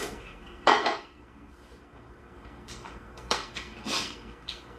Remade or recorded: remade